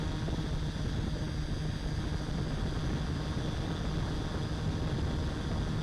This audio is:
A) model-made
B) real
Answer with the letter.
B